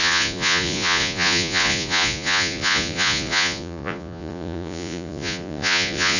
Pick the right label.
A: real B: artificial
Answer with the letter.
B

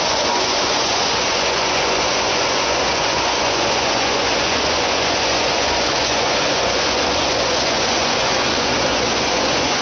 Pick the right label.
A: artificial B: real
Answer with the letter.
A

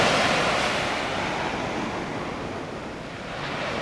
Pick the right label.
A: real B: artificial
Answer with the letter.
A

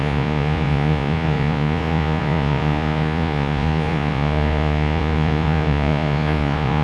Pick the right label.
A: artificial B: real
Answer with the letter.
A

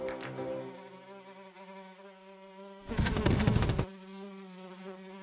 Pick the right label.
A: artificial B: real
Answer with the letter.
B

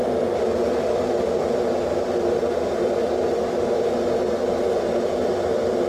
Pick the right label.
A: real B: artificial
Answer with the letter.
A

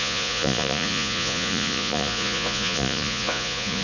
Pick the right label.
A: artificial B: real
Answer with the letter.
A